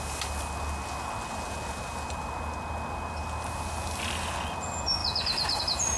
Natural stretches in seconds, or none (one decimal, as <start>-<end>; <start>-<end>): 0.0-6.0